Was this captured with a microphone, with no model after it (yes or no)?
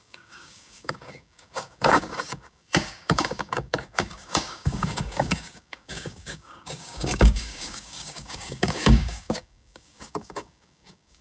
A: no